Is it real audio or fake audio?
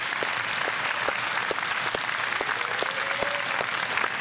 real